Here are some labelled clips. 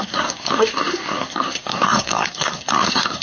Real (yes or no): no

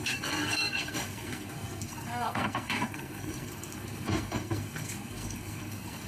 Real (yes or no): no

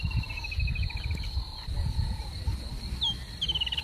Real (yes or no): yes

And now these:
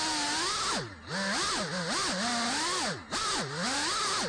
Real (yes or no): yes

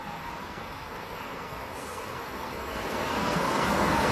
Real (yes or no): no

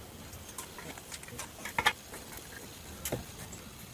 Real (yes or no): yes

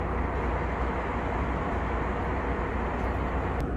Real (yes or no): yes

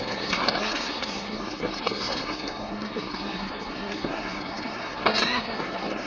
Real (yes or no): no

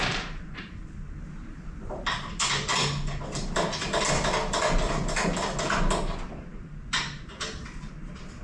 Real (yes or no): yes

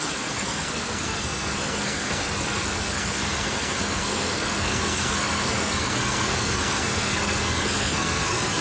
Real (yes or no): no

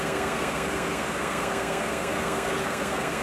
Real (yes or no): no